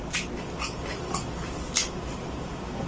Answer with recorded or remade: recorded